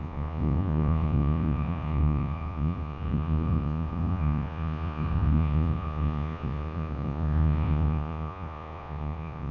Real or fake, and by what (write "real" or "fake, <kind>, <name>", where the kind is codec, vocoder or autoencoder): fake, vocoder, Vocos